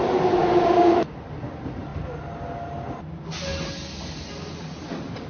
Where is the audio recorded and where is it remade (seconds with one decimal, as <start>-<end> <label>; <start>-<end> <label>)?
0.0-0.4 recorded; 0.4-1.1 remade; 1.1-5.3 recorded